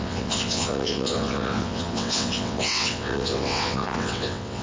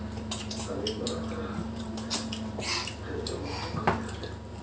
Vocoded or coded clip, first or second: first